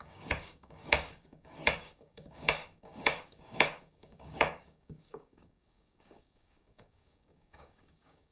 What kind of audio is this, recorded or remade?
remade